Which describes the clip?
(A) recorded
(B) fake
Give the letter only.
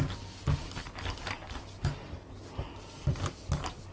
A